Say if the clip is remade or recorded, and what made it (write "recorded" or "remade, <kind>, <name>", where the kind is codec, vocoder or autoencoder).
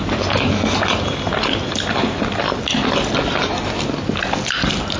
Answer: recorded